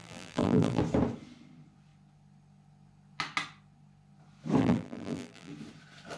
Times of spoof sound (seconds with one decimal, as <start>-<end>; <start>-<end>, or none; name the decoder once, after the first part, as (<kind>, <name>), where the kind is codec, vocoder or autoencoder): 0.0-0.8 (vocoder, BigVGAN v2); 4.6-5.5